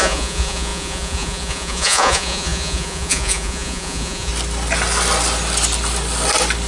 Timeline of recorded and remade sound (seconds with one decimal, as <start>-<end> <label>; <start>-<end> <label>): 0.0-4.3 remade; 4.3-6.7 recorded